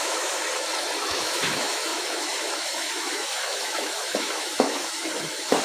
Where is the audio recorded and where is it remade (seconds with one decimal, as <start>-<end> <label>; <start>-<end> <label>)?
0.0-0.4 remade; 0.4-1.0 recorded; 1.0-5.6 remade